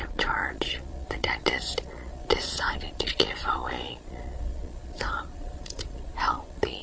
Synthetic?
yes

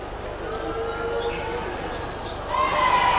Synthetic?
no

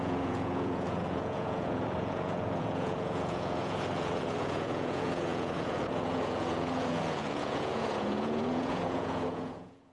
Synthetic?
yes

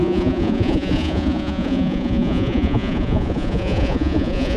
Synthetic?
yes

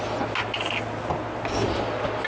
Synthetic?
no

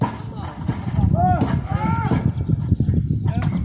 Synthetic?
no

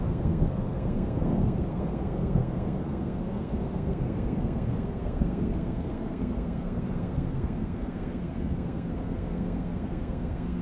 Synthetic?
yes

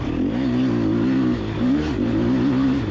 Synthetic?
no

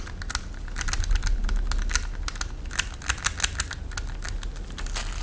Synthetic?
no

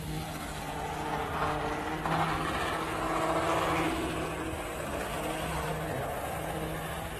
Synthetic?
no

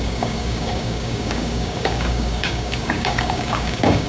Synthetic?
yes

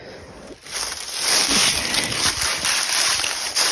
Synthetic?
no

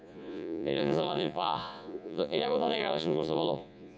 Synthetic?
yes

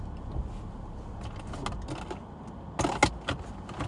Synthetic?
no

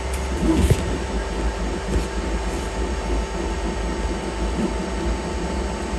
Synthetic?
no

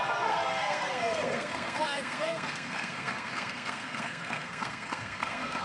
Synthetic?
yes